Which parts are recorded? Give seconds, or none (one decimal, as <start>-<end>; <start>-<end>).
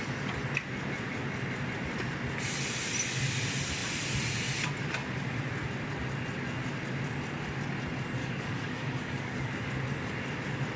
0.0-8.2; 9.7-10.8